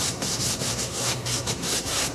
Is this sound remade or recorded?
remade